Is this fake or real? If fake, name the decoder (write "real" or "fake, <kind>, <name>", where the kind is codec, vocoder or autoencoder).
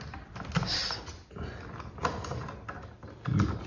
real